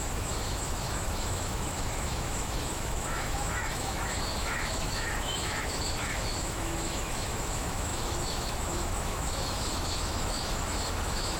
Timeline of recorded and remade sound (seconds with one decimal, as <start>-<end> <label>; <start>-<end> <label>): 0.0-11.4 remade